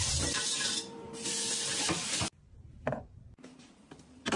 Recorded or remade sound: remade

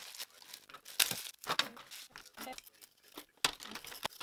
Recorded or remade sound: recorded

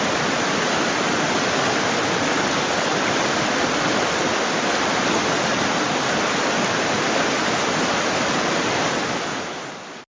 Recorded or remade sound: recorded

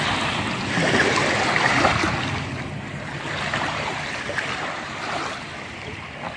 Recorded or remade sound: remade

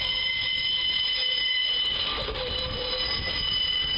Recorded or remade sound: remade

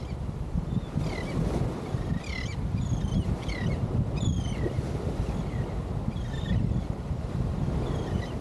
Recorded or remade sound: recorded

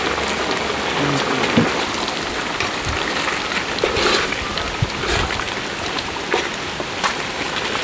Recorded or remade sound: recorded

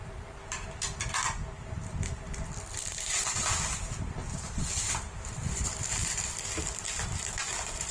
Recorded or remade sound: remade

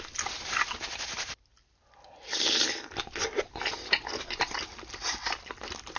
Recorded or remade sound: recorded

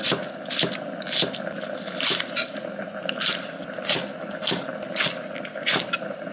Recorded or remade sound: recorded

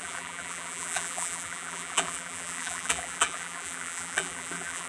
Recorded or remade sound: remade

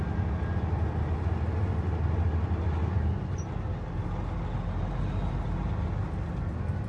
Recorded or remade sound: recorded